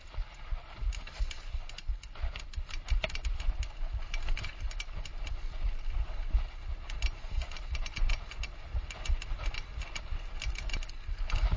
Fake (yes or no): no